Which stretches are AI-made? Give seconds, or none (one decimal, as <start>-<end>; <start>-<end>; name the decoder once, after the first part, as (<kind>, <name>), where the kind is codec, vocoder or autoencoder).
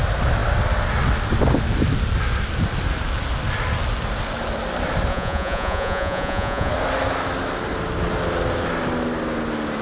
5.1-6.7 (vocoder, Vocos)